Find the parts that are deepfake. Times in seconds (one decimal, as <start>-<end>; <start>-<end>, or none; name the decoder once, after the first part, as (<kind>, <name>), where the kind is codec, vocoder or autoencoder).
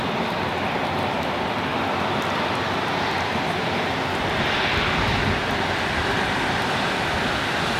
0.0-1.7 (vocoder, BigVGAN v2); 5.6-7.8